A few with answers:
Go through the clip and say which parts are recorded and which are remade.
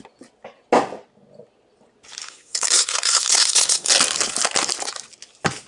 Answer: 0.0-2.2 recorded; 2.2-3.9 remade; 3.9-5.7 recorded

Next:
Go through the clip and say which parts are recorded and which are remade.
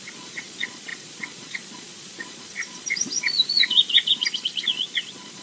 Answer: 0.0-5.4 remade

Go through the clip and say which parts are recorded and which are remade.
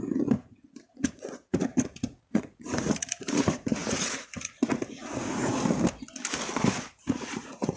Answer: 0.0-5.5 remade; 5.5-6.9 recorded; 6.9-7.8 remade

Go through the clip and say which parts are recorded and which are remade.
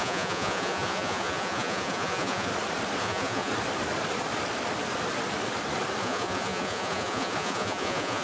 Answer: 0.0-2.5 remade; 2.5-3.0 recorded; 3.0-3.5 remade; 3.5-6.0 recorded; 6.0-8.2 remade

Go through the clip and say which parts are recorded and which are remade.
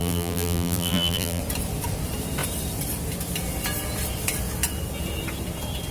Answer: 0.0-1.4 remade; 1.4-5.9 recorded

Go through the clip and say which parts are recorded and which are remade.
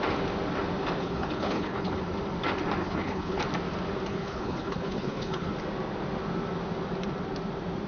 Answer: 0.0-1.0 recorded; 1.0-1.9 remade; 1.9-2.8 recorded; 2.8-3.4 remade; 3.4-4.1 recorded; 4.1-5.5 remade; 5.5-7.9 recorded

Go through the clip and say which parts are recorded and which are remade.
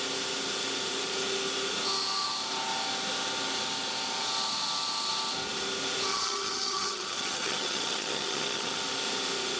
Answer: 0.0-6.1 recorded; 6.1-8.8 remade; 8.8-9.6 recorded